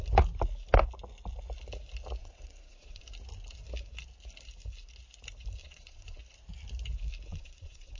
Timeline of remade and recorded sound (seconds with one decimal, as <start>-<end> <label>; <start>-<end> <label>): 0.0-2.2 recorded; 2.2-3.0 remade; 3.0-5.6 recorded; 5.6-6.2 remade; 6.2-7.3 recorded; 7.3-8.0 remade